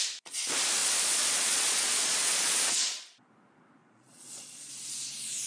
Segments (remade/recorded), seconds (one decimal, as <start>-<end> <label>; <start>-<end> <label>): 0.0-0.8 recorded; 0.8-3.3 remade; 3.3-3.8 recorded; 3.8-4.7 remade; 4.7-5.5 recorded